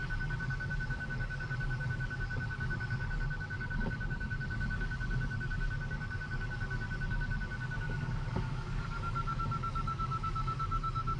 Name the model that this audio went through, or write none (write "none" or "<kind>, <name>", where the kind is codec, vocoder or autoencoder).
codec, DAC